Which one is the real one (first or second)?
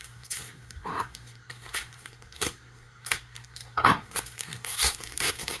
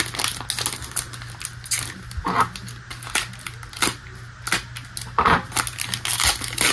second